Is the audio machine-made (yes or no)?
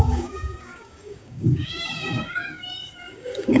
yes